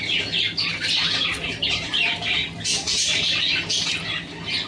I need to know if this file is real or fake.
real